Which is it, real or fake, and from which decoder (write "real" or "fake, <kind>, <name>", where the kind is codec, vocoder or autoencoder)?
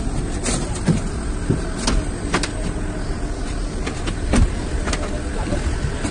real